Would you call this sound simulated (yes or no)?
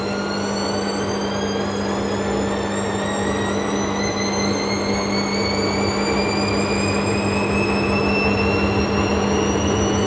no